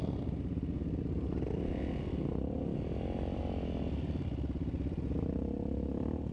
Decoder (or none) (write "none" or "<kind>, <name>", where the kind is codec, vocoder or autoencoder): none